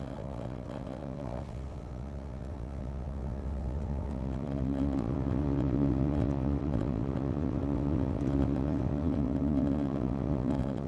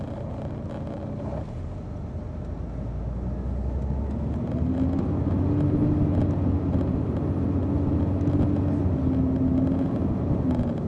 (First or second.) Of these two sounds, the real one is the second